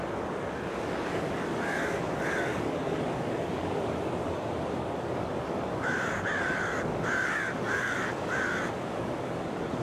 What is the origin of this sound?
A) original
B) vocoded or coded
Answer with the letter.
B